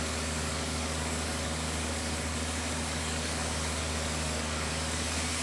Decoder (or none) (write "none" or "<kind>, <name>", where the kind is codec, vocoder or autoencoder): codec, DAC